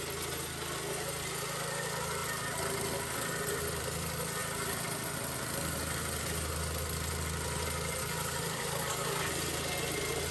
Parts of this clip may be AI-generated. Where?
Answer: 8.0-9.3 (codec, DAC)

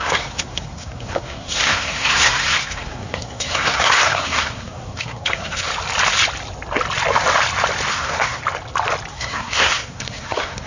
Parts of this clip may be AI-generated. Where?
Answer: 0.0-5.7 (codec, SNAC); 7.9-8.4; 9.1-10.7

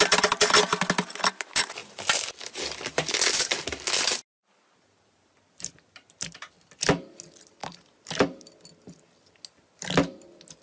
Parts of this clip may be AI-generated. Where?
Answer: none

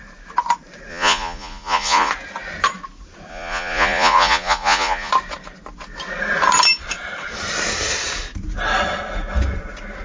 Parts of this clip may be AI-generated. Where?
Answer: 0.9-2.1 (vocoder, Vocos); 3.3-5.1

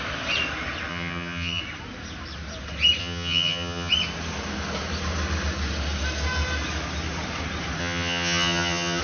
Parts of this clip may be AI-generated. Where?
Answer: 0.9-1.6 (vocoder, HiFi-GAN); 3.0-3.9; 7.8-9.0